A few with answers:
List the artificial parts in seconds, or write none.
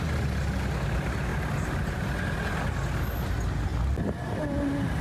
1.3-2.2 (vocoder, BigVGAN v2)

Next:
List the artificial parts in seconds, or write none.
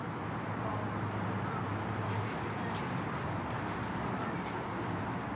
0.0-0.7 (vocoder, BigVGAN v2); 3.9-5.4